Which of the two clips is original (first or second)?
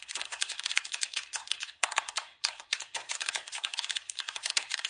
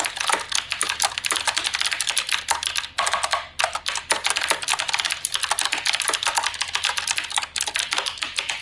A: second